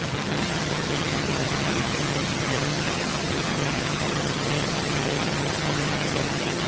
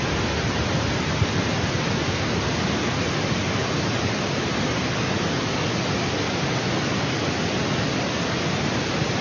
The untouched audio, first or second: second